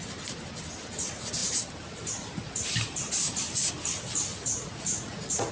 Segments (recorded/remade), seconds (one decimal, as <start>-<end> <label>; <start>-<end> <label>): 0.0-4.3 recorded; 4.3-5.5 remade